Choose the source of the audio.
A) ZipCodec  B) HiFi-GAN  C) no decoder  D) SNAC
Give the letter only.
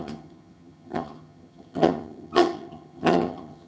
B